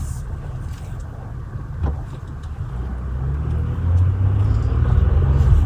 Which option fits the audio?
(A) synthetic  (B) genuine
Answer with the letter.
B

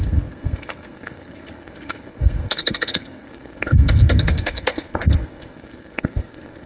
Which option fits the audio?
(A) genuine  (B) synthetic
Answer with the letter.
B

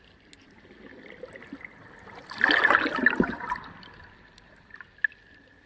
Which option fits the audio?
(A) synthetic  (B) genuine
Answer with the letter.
B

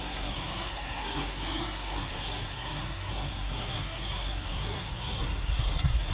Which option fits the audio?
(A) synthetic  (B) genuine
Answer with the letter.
A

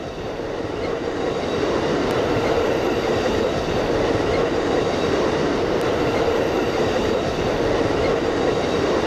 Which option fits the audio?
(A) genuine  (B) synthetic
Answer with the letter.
B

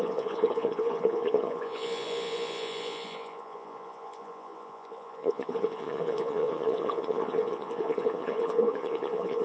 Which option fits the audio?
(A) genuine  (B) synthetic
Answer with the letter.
B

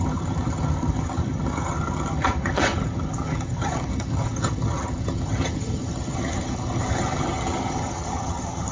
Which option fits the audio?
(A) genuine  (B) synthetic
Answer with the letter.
B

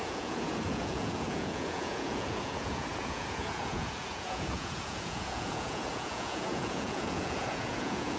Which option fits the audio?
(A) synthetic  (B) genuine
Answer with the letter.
A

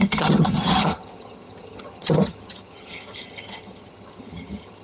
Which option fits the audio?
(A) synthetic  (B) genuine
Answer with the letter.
A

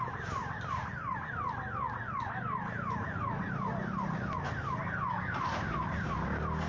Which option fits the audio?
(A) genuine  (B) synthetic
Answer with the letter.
A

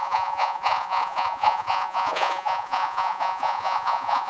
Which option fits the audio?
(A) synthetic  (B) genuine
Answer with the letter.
A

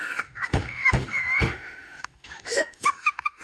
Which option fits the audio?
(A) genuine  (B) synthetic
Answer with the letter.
B